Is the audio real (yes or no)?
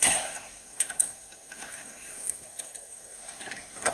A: no